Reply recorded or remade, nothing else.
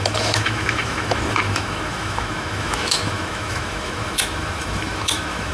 remade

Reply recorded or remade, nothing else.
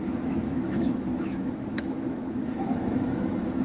remade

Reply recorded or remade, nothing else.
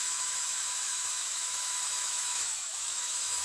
remade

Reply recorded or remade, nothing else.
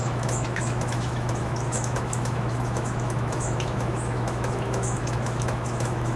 remade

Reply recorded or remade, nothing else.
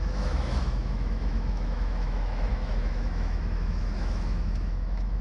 remade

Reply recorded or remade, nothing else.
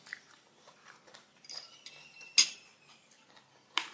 recorded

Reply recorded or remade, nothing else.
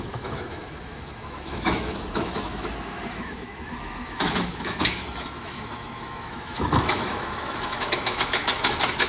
remade